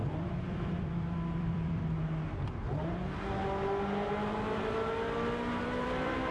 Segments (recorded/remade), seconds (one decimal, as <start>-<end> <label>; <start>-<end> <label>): 0.0-1.8 remade; 1.8-5.6 recorded; 5.6-6.3 remade